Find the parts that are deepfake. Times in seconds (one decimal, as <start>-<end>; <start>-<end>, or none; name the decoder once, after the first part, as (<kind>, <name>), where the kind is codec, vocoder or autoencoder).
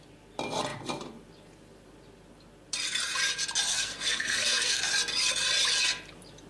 3.7-4.8 (codec, SNAC)